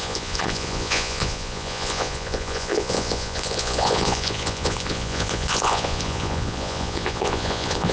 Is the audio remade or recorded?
remade